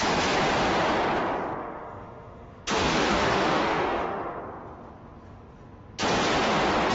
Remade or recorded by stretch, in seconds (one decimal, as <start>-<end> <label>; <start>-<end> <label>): 0.0-1.6 recorded; 1.6-4.4 remade; 4.4-6.9 recorded